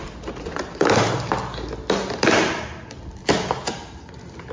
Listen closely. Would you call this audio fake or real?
real